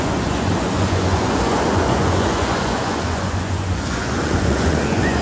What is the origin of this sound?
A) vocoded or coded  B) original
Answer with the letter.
A